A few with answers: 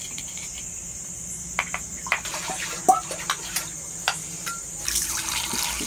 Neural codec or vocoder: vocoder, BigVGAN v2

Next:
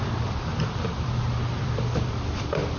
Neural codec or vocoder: vocoder, BigVGAN v2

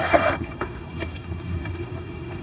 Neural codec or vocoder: codec, SNAC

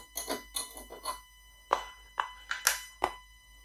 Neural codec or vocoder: none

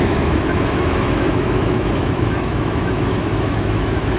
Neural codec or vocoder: autoencoder, DAC-VAE